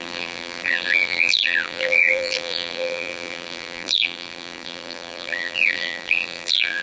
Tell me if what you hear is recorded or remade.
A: remade